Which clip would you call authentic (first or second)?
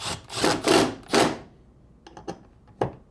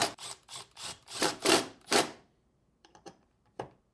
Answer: first